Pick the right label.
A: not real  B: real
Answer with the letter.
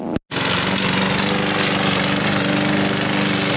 B